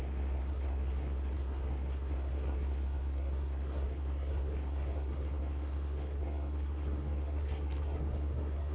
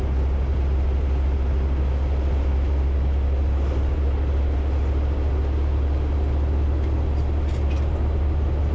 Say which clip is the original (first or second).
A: second